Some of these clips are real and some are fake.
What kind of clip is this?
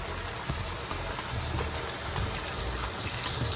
real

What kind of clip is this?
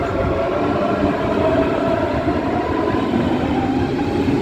fake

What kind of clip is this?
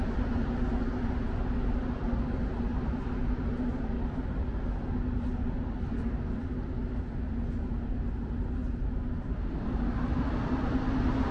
real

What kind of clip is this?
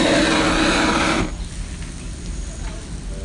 real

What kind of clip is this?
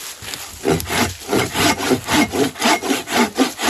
real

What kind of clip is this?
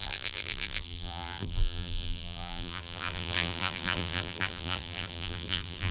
fake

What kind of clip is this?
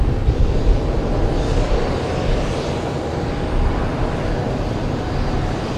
real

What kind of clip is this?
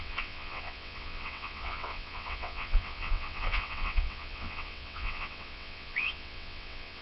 fake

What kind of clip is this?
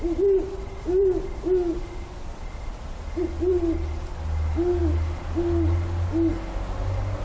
real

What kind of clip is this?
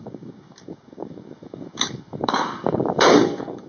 fake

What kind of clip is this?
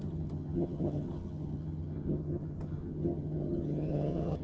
fake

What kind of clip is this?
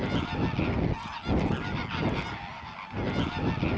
real